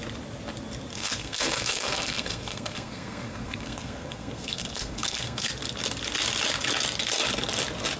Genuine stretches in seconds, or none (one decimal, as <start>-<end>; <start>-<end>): 0.0-0.9; 5.5-8.0